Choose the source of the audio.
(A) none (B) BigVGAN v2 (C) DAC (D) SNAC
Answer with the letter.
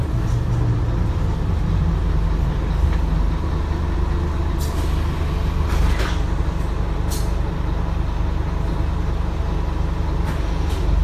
A